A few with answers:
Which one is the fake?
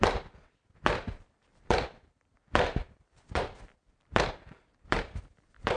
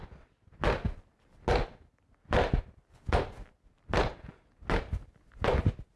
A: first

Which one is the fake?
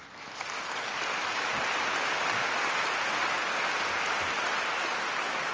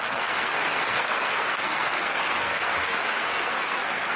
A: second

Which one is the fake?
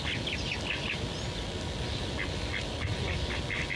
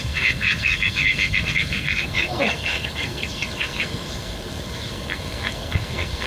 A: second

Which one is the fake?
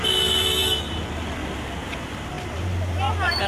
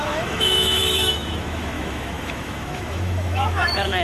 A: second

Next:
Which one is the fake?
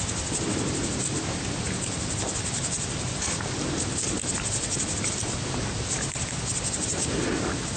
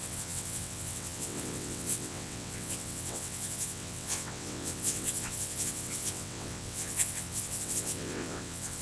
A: second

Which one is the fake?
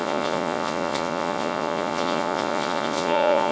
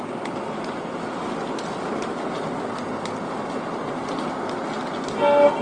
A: first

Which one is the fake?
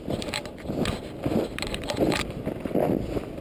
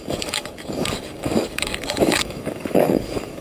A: second